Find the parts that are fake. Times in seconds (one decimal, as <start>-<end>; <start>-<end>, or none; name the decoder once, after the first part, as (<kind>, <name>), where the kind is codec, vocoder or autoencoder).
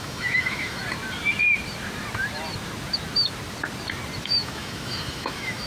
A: 0.0-0.8 (autoencoder, DAC-VAE); 4.2-5.7